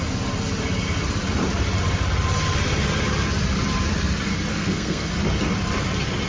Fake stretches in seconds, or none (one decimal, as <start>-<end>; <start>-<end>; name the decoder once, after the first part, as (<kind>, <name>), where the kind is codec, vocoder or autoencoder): 4.5-5.1 (codec, SNAC)